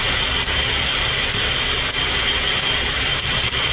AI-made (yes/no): no